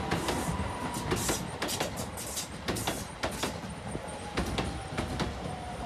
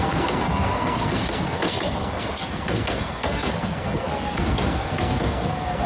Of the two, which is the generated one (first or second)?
second